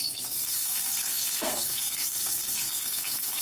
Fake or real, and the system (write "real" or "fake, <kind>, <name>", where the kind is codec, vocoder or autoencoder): fake, codec, SNAC